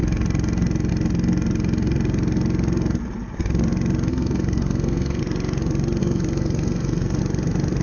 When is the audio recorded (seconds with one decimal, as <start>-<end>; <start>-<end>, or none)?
0.0-4.1; 5.2-6.0; 7.2-7.8